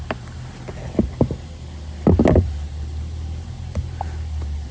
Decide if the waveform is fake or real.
real